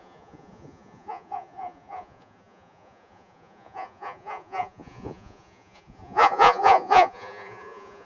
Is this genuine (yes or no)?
no